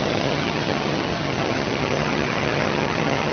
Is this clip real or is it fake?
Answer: fake